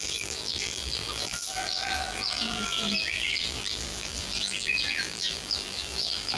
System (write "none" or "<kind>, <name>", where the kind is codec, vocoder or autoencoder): vocoder, BigVGAN v2